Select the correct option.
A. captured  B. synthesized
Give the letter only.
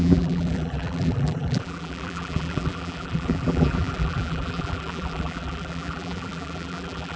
B